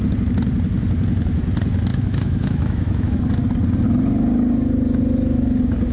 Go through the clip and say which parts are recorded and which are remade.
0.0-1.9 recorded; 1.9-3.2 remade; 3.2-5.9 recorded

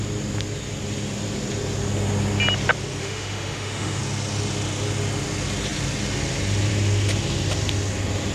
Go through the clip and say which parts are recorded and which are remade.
0.0-3.0 recorded; 3.0-4.0 remade; 4.0-8.3 recorded